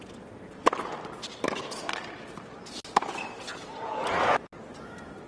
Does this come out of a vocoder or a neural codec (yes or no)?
no